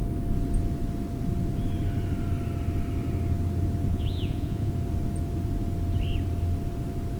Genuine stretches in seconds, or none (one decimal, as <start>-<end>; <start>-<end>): 0.0-3.9; 4.7-7.2